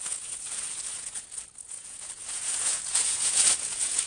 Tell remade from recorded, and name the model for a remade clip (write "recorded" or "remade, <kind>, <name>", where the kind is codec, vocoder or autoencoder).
remade, vocoder, Vocos